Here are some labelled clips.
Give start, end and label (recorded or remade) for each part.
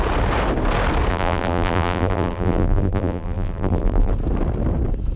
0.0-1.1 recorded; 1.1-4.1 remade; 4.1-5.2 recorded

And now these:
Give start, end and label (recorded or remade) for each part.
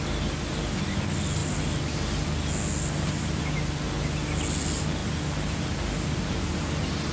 0.0-7.1 recorded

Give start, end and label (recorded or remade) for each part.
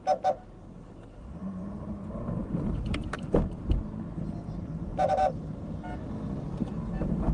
0.0-1.4 recorded; 1.4-2.8 remade; 2.8-4.9 recorded; 4.9-5.5 remade; 5.5-7.3 recorded